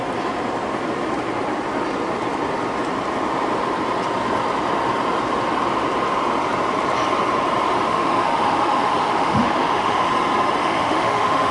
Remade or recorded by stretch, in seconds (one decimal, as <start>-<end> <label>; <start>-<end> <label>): 0.0-7.9 recorded; 7.9-10.1 remade; 10.1-10.6 recorded; 10.6-11.5 remade